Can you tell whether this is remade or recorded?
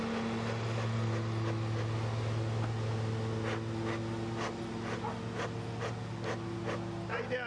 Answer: recorded